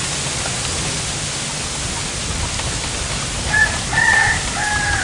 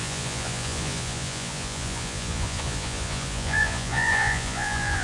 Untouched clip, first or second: first